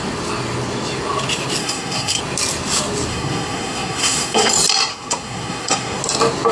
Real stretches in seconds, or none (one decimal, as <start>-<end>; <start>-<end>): 0.0-1.6; 2.2-3.1; 4.5-4.9; 6.0-6.5